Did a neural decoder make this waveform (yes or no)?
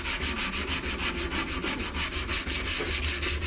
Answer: no